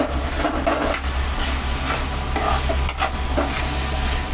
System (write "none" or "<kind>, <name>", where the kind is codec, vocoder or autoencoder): none